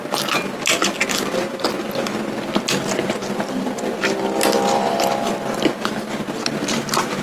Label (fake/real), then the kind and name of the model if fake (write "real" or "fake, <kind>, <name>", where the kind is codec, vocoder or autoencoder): real